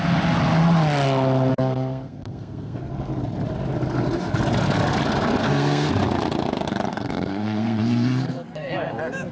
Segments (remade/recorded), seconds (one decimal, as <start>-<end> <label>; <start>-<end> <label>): 0.0-1.5 recorded; 1.5-2.9 remade; 2.9-5.4 recorded; 5.4-5.9 remade; 5.9-6.9 recorded; 6.9-8.7 remade; 8.7-9.3 recorded